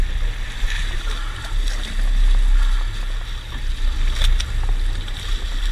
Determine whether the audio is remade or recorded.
recorded